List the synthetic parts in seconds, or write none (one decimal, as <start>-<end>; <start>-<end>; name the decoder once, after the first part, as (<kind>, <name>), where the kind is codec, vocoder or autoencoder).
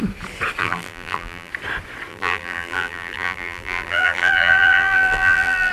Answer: 0.6-1.5 (vocoder, BigVGAN v2); 2.1-5.7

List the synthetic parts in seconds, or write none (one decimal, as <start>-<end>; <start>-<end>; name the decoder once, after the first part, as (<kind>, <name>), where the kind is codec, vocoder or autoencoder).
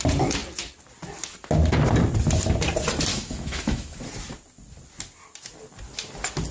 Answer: 3.1-4.0 (autoencoder, DAC-VAE)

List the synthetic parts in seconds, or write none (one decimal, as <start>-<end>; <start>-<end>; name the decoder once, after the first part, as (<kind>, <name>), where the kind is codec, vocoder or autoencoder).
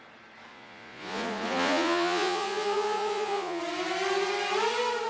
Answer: 0.5-3.6 (vocoder, Vocos)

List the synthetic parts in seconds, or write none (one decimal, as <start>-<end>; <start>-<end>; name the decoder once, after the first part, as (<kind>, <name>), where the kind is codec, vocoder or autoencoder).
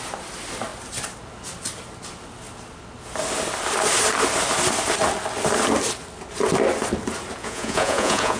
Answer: 7.4-8.4 (vocoder, Vocos)